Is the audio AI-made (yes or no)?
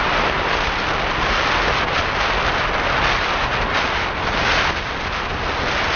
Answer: no